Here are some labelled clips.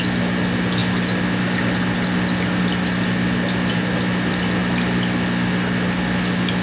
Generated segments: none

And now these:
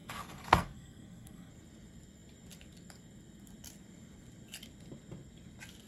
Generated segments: 0.0-1.5 (codec, SNAC)

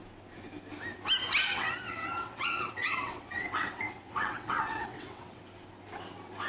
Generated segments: 1.5-5.4 (vocoder, WaveNeXt)

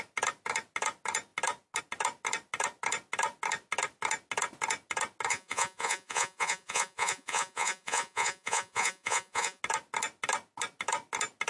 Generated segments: 5.3-9.6 (vocoder, Vocos)

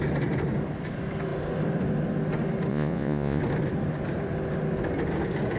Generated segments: 2.7-3.4 (vocoder, Vocos)

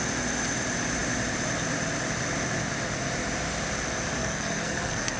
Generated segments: 4.2-5.2 (codec, SNAC)

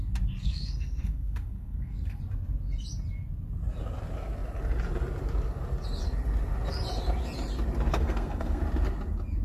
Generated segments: 0.4-2.2 (codec, SNAC); 7.9-8.6